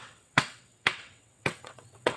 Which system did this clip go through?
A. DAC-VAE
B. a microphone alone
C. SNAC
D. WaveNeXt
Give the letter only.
D